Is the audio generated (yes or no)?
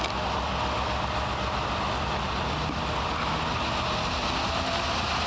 no